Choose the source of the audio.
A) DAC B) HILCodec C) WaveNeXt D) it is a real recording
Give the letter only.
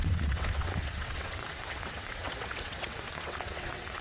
C